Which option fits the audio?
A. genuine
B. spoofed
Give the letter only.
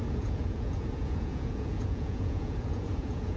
B